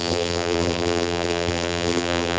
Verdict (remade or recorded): remade